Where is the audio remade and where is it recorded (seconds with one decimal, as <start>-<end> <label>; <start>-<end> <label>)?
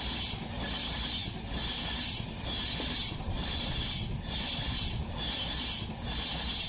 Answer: 0.0-6.7 recorded